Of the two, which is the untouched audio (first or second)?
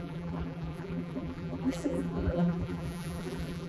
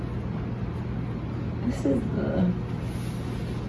second